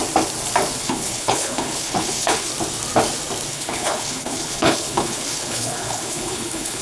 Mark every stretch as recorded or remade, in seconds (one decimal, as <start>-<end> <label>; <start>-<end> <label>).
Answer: 0.0-0.8 recorded; 0.8-2.5 remade; 2.5-3.5 recorded; 3.5-6.8 remade